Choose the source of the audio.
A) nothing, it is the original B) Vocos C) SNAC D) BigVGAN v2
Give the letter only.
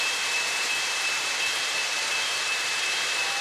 D